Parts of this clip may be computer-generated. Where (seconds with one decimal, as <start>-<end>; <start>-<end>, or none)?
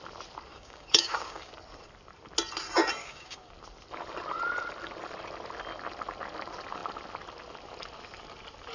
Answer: 0.5-1.5; 3.0-3.5